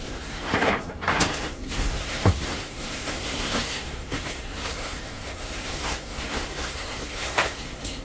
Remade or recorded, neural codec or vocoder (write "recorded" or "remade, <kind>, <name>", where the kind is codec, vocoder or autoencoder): remade, codec, SNAC